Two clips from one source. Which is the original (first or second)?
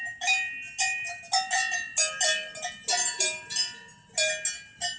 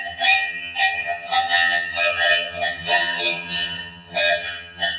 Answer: first